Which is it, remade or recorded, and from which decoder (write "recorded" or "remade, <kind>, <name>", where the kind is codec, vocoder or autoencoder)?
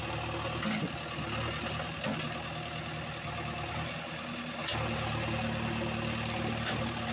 recorded